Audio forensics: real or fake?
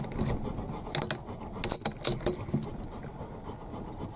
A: real